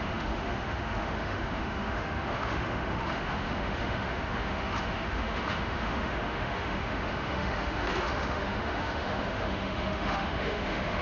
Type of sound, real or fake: fake